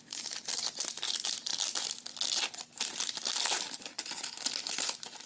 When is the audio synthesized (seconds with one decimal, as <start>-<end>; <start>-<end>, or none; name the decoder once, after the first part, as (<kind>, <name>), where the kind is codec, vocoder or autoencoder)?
none